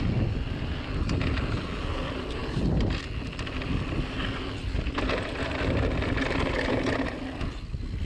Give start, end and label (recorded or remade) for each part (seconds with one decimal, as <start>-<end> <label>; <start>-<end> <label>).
0.0-8.1 recorded